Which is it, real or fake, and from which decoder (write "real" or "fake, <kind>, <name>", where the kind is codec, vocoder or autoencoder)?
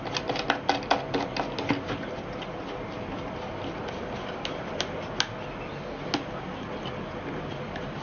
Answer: real